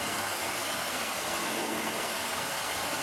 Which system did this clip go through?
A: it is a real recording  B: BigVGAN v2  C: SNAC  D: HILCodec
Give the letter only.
C